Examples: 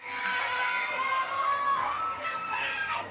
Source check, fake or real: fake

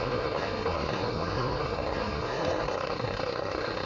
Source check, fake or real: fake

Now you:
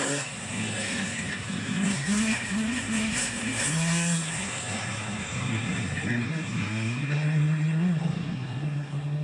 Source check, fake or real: fake